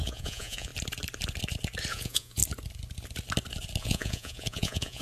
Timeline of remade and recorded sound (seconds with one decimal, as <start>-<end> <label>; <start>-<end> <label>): 0.0-0.7 remade; 0.7-1.9 recorded; 1.9-2.4 remade; 2.4-3.8 recorded; 3.8-5.0 remade